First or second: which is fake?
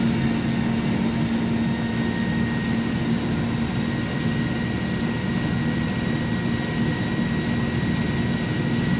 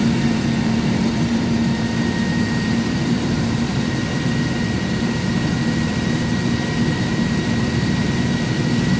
second